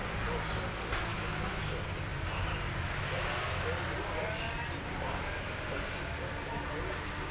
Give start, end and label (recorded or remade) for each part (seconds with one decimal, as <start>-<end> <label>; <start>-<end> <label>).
0.0-1.1 recorded; 1.1-1.7 remade; 1.7-7.3 recorded